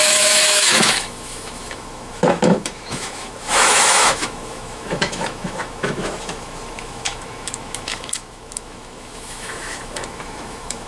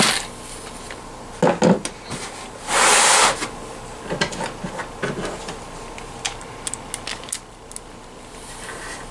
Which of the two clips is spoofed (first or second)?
first